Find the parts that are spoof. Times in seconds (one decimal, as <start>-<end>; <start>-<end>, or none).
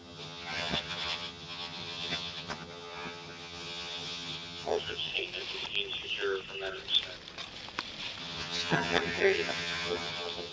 0.0-5.1; 8.2-10.5